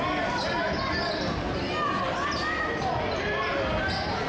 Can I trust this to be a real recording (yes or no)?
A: yes